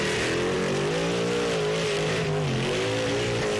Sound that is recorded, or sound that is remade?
remade